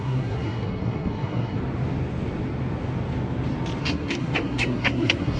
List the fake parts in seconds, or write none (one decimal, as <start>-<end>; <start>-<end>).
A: 0.0-1.6; 3.8-5.4